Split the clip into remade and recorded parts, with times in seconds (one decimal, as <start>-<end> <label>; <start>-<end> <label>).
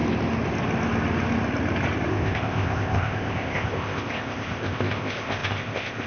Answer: 0.0-2.1 recorded; 2.1-6.1 remade